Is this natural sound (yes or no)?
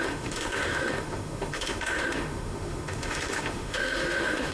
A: no